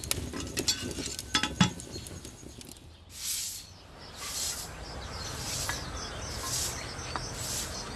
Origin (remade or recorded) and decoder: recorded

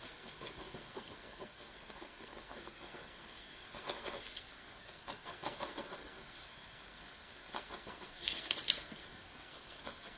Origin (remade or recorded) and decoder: remade, codec, SNAC